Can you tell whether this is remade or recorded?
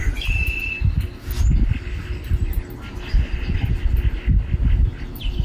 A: recorded